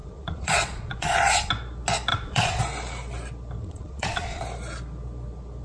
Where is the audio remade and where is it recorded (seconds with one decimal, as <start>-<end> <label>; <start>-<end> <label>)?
0.0-1.5 remade; 1.5-2.1 recorded; 2.1-2.6 remade; 2.6-3.6 recorded; 3.6-4.4 remade; 4.4-5.6 recorded